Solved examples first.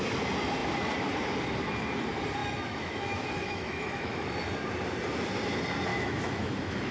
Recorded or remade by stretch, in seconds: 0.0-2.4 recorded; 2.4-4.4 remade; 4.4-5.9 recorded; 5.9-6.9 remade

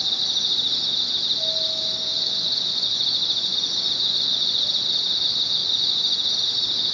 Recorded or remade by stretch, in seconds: 0.0-2.1 recorded; 2.1-4.7 remade; 4.7-5.6 recorded; 5.6-6.3 remade; 6.3-6.9 recorded

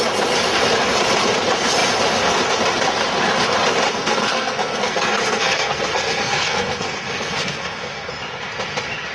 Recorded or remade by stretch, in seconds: 0.0-3.9 recorded; 3.9-8.1 remade; 8.1-9.1 recorded